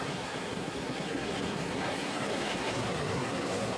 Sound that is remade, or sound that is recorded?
remade